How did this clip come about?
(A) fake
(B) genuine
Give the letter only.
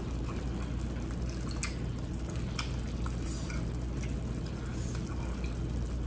B